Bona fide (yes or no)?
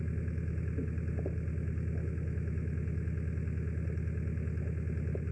yes